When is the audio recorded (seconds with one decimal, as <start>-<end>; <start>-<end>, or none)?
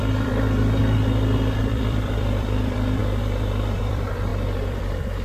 0.8-1.6; 3.0-3.8